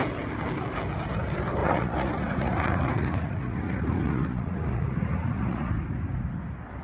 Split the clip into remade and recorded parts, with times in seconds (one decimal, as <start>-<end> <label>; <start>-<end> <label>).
0.0-1.6 recorded; 1.6-5.7 remade; 5.7-6.8 recorded